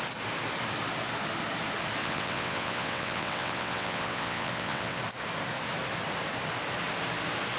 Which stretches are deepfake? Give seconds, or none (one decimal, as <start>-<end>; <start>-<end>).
2.0-5.0